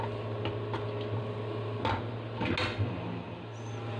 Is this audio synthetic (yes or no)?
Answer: no